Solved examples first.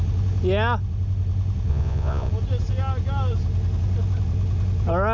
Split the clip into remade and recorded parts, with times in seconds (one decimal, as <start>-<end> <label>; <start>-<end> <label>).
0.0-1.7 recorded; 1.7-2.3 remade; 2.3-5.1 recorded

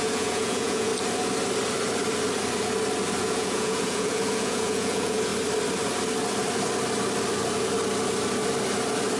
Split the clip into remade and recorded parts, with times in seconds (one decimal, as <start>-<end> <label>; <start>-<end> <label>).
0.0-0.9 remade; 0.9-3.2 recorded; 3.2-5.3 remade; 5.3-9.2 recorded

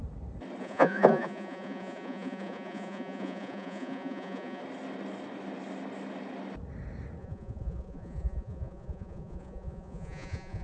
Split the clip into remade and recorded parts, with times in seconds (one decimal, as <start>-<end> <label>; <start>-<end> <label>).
0.0-0.6 recorded; 0.6-4.6 remade; 4.6-7.2 recorded; 7.2-10.6 remade